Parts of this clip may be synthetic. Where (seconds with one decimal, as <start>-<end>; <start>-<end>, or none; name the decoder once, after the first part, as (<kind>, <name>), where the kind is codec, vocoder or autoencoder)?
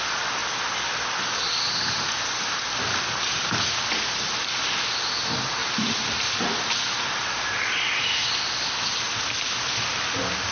none